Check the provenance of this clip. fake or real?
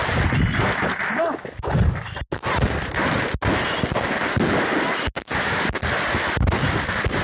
real